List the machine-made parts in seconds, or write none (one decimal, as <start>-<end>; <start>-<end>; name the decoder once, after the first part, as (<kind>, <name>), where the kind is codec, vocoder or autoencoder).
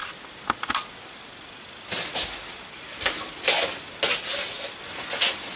none